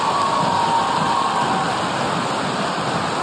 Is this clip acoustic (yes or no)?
yes